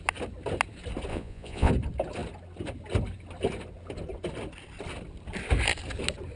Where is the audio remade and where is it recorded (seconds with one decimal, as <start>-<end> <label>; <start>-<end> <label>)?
0.0-1.1 recorded; 1.1-1.7 remade; 1.7-6.4 recorded